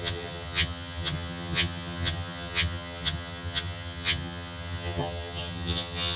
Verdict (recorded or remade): remade